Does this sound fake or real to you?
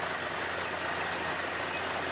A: real